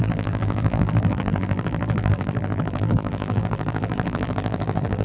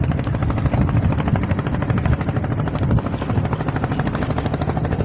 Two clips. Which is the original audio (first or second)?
second